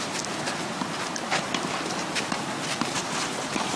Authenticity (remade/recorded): recorded